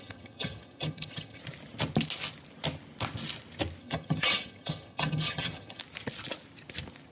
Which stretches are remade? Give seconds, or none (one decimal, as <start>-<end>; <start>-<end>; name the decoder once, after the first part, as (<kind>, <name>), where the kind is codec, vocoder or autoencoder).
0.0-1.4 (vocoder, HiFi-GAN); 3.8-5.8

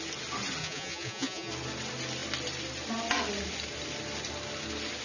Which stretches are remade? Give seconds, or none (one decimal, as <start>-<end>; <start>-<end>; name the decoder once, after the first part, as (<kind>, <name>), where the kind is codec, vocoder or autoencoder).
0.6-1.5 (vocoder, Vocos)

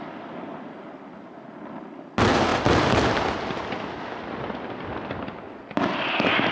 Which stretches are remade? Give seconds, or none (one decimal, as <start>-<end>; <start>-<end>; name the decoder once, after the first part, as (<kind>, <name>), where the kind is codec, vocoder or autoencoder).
none